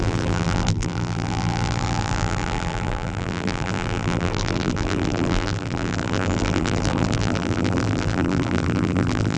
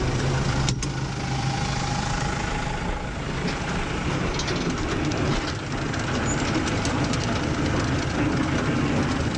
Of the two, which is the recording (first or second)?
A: second